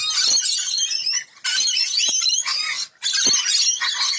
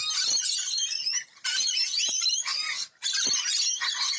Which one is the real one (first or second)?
first